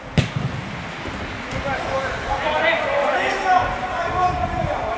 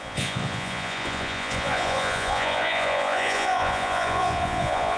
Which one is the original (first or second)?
first